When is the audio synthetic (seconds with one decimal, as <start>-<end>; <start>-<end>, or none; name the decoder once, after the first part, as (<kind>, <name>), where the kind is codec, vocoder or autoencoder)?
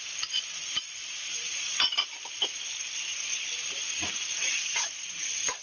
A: 1.0-2.1 (vocoder, Vocos)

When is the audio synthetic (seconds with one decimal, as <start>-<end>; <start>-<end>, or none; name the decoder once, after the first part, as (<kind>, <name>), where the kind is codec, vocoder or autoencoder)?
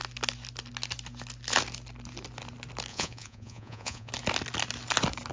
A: 2.9-4.1 (vocoder, Vocos)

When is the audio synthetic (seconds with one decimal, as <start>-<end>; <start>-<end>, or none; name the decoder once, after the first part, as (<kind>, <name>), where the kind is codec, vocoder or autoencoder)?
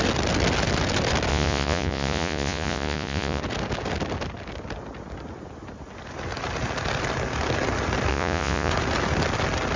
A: 1.3-3.4 (vocoder, Vocos); 8.1-8.7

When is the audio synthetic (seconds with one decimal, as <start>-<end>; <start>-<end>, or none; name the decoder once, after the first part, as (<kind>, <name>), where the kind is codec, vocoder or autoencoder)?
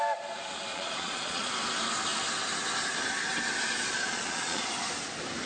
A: 0.7-1.5 (vocoder, Vocos); 3.9-4.7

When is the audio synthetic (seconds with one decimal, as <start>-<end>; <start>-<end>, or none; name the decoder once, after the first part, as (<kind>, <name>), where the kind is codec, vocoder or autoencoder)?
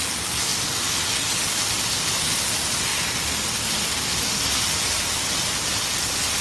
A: none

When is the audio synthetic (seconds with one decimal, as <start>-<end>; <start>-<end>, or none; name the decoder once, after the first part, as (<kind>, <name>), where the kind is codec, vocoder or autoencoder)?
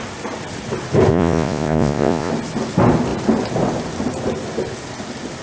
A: 1.1-2.3 (vocoder, Vocos)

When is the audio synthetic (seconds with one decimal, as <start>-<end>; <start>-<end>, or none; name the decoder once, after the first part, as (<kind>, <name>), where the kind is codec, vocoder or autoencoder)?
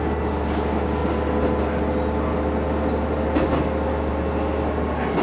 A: none